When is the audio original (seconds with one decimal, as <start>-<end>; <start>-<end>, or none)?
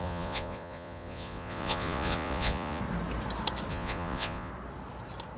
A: 2.8-3.7; 4.5-5.4